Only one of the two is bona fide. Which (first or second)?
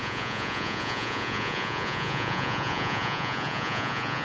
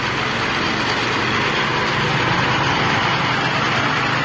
second